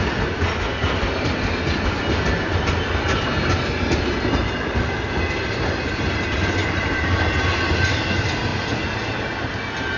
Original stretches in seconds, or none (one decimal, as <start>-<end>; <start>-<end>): 0.0-10.0